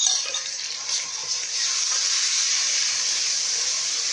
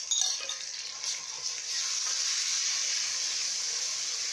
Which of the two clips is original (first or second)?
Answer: second